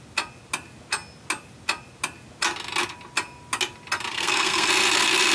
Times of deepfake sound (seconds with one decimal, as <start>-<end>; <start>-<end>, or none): 4.1-4.7